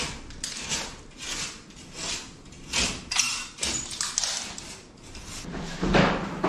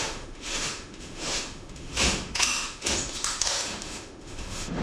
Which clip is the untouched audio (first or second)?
first